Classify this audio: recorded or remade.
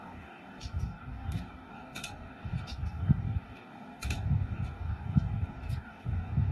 remade